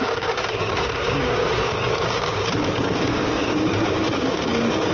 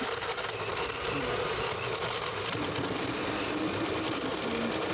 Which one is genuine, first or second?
second